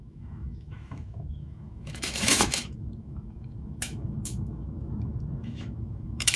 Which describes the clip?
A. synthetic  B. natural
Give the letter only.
A